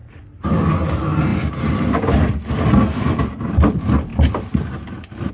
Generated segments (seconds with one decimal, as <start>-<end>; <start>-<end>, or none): none